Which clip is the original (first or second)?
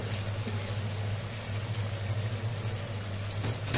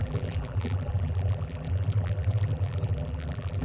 first